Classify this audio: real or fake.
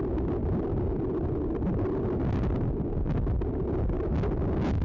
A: real